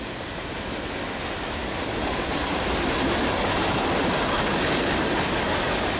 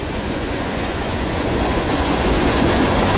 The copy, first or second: second